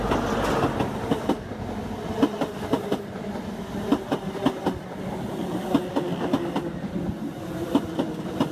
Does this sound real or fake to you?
real